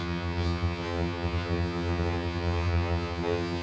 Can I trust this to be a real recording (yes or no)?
no